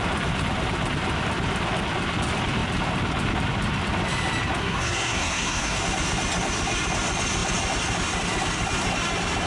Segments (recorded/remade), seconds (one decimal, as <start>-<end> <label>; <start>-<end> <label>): 0.0-4.6 recorded; 4.6-5.8 remade; 5.8-9.5 recorded